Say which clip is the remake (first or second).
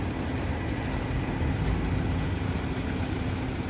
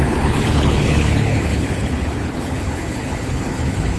second